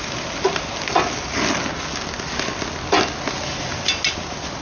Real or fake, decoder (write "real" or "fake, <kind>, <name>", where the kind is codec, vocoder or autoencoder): real